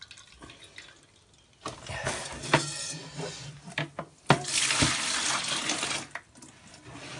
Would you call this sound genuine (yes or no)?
yes